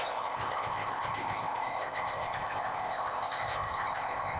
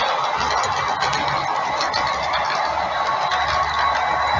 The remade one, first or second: first